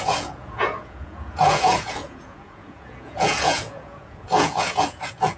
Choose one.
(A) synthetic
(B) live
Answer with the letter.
A